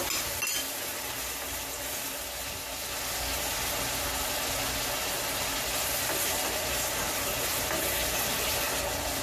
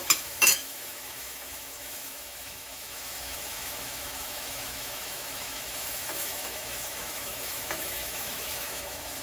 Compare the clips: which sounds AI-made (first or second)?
second